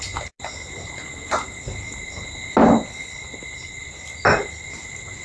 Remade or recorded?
recorded